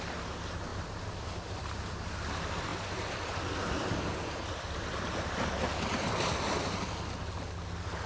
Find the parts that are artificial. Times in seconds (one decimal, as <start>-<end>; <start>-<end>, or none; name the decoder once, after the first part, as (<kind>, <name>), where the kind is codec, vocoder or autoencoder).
0.7-1.6 (vocoder, BigVGAN v2); 2.7-6.9